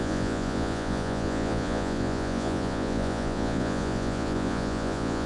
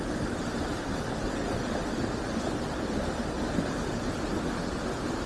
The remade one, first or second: first